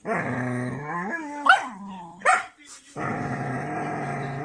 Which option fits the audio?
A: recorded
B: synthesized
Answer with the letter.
A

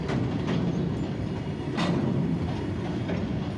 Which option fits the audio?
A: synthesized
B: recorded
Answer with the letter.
B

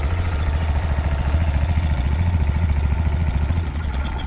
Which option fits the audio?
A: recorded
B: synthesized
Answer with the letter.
B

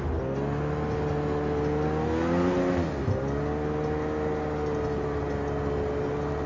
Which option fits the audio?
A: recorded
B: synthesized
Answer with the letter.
A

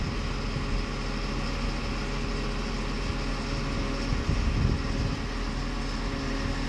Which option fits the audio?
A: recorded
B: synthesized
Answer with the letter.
A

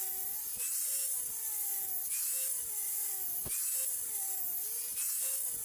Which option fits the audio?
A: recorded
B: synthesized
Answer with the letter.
A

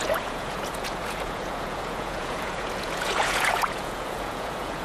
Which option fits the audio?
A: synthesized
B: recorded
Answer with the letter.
A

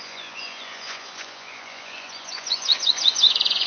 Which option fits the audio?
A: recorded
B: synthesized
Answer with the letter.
B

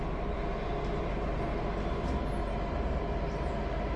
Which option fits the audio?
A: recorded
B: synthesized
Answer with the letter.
A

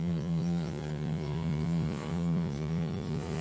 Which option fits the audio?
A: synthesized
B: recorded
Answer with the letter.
A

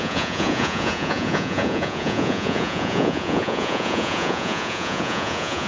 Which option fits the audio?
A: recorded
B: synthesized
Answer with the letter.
B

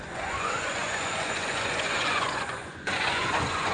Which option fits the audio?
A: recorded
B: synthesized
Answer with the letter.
B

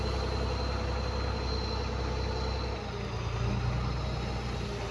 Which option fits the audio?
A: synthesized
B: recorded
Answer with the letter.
B